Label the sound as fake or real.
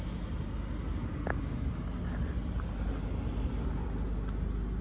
real